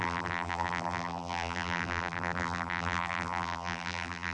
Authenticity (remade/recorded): remade